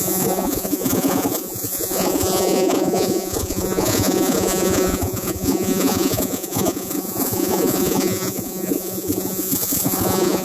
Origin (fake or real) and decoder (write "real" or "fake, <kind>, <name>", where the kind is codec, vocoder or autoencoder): fake, vocoder, Vocos